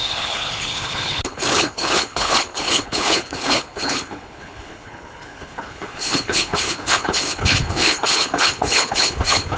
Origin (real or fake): fake